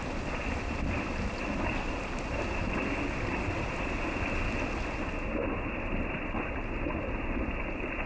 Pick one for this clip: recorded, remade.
recorded